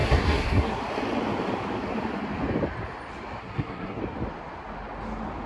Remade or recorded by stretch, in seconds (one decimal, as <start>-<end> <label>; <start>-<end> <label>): 0.0-0.8 remade; 0.8-3.4 recorded; 3.4-4.0 remade; 4.0-5.5 recorded